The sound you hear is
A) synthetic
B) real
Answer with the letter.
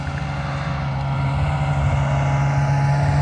B